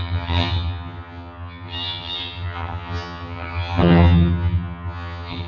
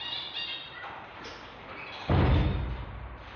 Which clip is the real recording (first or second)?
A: second